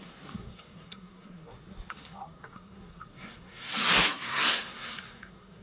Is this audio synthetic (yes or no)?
yes